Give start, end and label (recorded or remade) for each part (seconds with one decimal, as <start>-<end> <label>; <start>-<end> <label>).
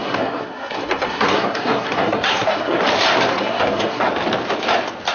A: 0.0-2.8 remade; 2.8-3.3 recorded; 3.3-4.1 remade; 4.1-5.1 recorded